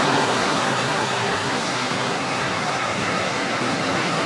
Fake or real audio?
fake